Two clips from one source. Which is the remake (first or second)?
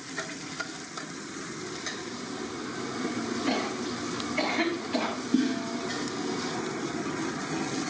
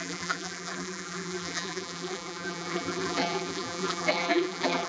second